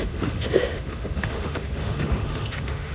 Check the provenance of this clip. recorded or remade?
remade